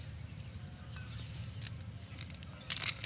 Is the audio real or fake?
real